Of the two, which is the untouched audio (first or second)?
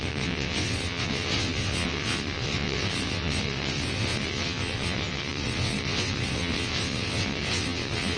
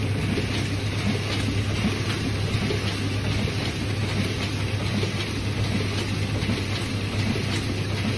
second